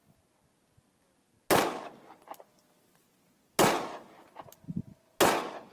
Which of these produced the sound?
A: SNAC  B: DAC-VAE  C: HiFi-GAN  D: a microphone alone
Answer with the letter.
D